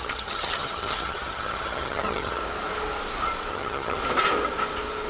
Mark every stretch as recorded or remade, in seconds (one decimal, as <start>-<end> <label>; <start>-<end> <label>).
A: 0.0-2.4 remade; 2.4-3.5 recorded; 3.5-4.0 remade; 4.0-5.1 recorded